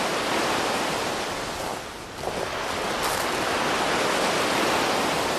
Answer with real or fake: real